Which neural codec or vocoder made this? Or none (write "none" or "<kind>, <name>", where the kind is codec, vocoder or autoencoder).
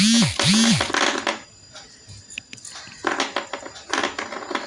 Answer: none